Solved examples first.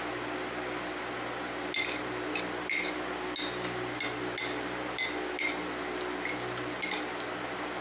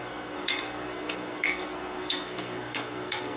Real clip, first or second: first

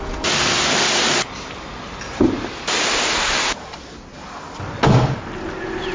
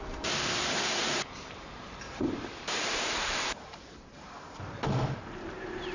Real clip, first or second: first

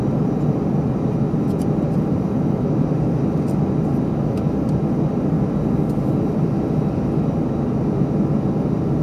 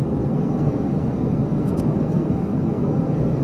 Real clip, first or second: first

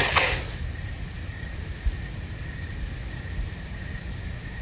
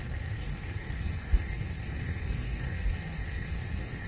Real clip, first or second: first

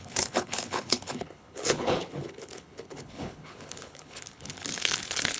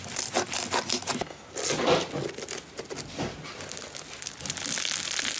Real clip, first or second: second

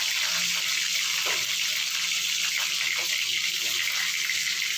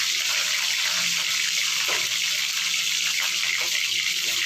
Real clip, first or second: first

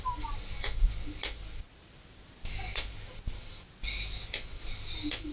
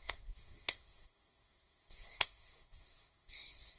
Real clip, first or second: first